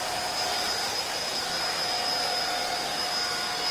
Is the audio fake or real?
real